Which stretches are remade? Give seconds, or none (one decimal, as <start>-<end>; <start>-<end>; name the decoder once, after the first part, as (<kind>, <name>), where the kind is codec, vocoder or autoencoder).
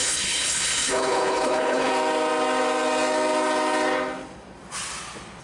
0.0-1.9 (codec, HILCodec)